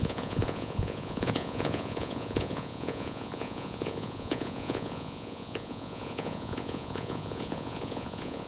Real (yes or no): no